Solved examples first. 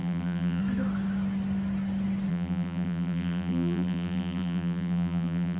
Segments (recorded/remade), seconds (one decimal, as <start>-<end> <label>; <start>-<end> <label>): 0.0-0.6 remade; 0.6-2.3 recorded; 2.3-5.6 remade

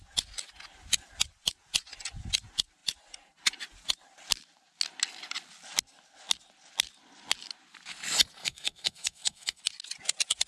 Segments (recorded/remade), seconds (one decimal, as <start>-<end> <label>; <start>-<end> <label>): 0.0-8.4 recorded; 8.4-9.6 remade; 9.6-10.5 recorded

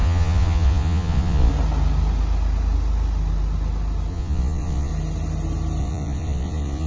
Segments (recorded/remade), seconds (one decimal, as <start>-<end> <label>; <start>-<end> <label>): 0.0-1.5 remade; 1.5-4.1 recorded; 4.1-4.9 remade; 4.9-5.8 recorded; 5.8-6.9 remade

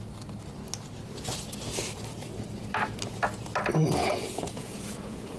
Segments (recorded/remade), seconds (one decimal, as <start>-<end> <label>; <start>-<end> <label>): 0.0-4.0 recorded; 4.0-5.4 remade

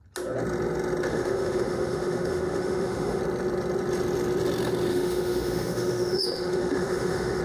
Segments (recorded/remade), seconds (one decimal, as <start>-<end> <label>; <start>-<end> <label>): 0.0-1.1 recorded; 1.1-3.2 remade; 3.2-4.9 recorded; 4.9-7.4 remade

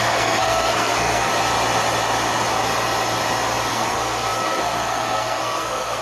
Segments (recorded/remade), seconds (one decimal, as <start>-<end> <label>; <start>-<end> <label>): 0.0-1.3 remade; 1.3-3.7 recorded; 3.7-6.0 remade

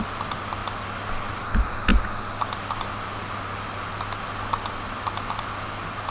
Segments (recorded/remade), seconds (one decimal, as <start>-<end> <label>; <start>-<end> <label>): 0.0-6.1 recorded